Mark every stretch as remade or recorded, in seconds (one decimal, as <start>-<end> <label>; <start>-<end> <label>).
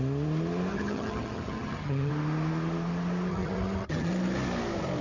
0.0-0.7 recorded; 0.7-2.1 remade; 2.1-3.3 recorded; 3.3-4.1 remade; 4.1-5.0 recorded